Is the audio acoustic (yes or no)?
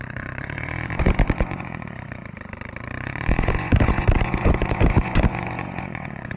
no